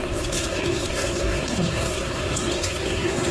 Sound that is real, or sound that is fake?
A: fake